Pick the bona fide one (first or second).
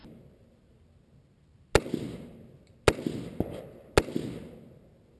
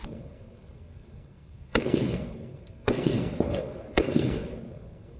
first